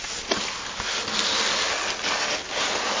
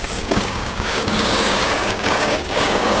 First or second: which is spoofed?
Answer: second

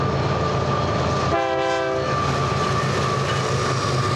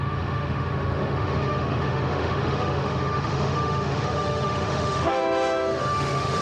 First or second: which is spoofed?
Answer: second